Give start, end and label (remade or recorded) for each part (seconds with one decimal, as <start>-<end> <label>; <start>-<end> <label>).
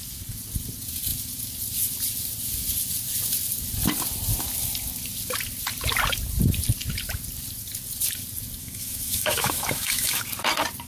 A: 0.0-8.6 recorded; 8.6-10.2 remade; 10.2-10.9 recorded